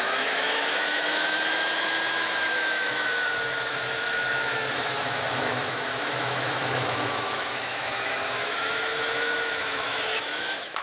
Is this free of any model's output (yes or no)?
no